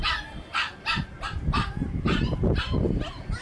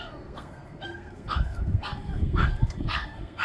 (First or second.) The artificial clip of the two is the second